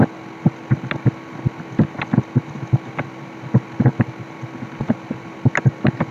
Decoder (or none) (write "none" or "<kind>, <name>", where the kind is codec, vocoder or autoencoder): none